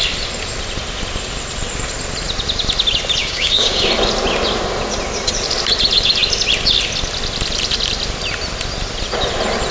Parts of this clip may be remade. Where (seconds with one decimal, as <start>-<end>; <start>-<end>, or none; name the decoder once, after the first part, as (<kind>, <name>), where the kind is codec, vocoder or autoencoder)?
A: 3.2-3.9 (codec, DAC)